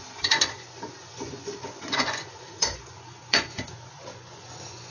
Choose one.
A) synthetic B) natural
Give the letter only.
A